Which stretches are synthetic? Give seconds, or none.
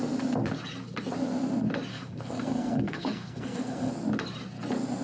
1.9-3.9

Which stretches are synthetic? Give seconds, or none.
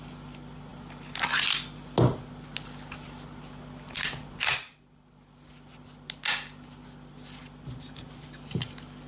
none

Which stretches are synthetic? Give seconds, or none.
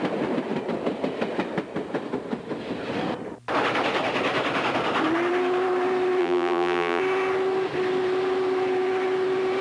6.2-7.0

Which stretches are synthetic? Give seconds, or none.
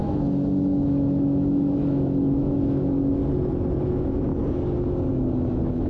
0.0-3.2; 3.8-4.3; 5.1-5.9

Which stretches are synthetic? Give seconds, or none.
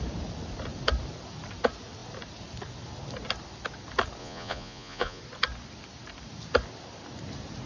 4.2-5.2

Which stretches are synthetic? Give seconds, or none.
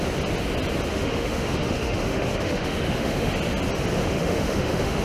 0.9-3.3; 4.0-5.0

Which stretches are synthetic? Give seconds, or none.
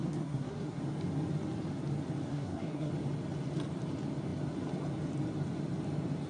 0.0-0.8; 2.3-2.9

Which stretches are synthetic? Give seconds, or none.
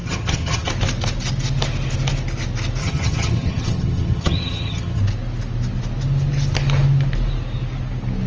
0.0-0.7; 2.8-5.0